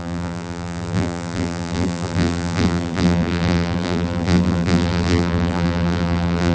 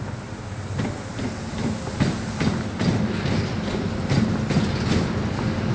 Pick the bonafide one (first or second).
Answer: second